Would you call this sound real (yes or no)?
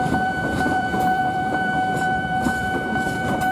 no